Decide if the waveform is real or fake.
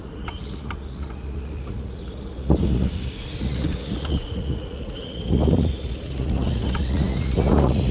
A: fake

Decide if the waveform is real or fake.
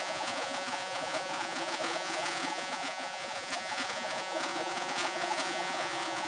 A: fake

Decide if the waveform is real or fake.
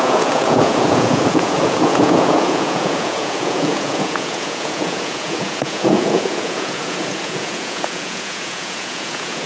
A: fake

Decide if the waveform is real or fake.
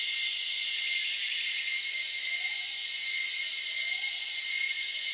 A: fake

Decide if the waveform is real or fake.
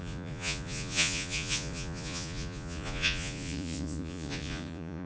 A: fake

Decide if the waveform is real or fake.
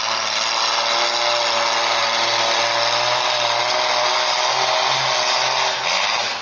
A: real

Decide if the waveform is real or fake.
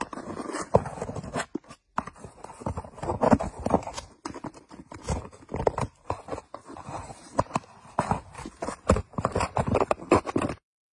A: real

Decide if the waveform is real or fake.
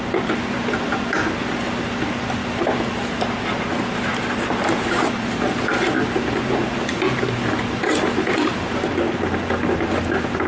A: real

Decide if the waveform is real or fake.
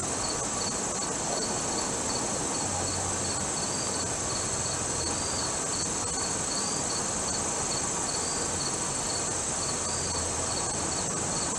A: real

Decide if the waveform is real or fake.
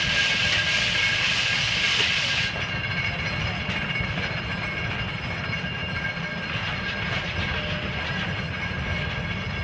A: real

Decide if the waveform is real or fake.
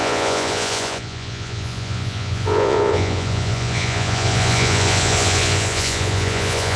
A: fake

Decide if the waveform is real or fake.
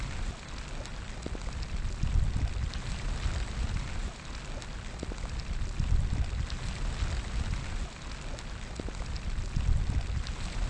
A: real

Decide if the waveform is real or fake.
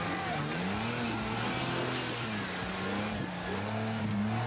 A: real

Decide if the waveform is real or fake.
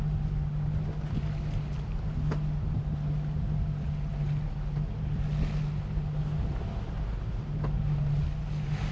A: real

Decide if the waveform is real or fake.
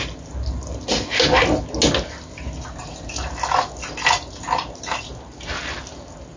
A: real